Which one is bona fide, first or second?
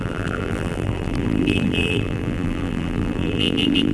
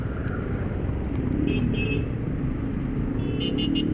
second